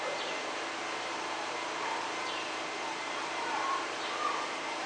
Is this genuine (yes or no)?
no